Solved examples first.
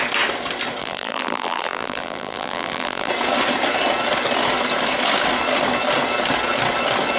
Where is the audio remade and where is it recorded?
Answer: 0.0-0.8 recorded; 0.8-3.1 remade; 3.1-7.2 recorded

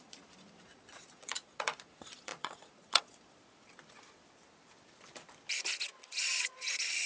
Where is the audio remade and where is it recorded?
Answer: 0.0-3.4 remade; 3.4-6.0 recorded; 6.0-7.1 remade

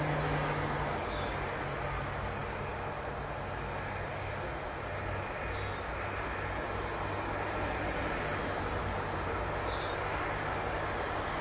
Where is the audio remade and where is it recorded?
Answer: 0.0-11.4 recorded

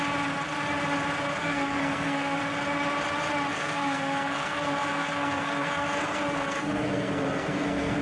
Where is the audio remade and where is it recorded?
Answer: 0.0-1.4 recorded; 1.4-2.4 remade; 2.4-3.5 recorded; 3.5-8.0 remade

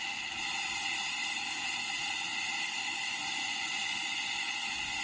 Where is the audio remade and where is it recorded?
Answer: 0.0-2.8 recorded; 2.8-5.0 remade

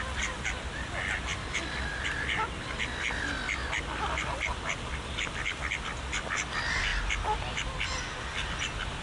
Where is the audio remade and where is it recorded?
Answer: 0.0-9.0 recorded

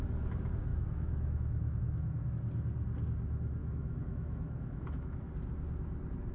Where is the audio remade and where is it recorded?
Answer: 0.0-0.7 recorded; 0.7-2.3 remade; 2.3-3.6 recorded; 3.6-5.2 remade; 5.2-6.3 recorded

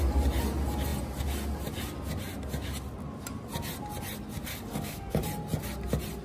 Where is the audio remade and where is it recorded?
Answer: 0.0-4.5 recorded; 4.5-5.2 remade; 5.2-6.2 recorded